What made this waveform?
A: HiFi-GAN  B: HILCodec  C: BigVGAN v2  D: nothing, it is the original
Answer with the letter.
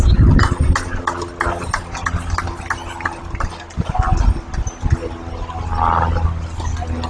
D